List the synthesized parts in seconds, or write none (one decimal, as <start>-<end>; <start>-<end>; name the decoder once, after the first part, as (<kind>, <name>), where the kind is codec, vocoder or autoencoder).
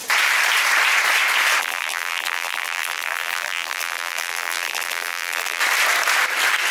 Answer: 1.6-5.6 (vocoder, BigVGAN v2)